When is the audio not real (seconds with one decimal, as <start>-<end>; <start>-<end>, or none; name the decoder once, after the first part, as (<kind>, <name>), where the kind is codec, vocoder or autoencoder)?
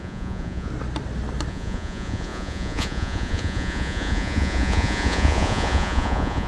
0.0-0.7 (vocoder, Vocos); 1.5-6.5